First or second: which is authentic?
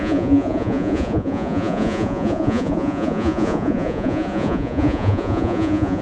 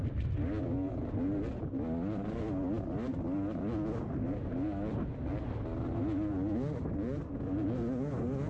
second